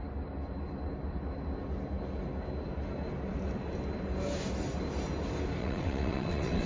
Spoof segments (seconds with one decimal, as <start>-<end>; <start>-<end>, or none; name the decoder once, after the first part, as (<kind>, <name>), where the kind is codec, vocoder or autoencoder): 5.6-6.7 (vocoder, WaveNeXt)